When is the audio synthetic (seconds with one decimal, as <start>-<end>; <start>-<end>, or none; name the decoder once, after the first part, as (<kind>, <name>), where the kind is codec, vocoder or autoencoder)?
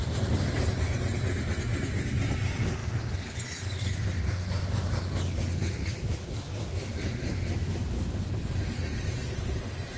none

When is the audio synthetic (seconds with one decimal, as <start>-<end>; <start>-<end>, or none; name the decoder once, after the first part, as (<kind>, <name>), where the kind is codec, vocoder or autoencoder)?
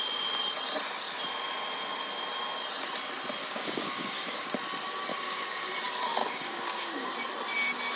3.4-4.5 (codec, DAC); 5.1-5.7; 6.2-7.1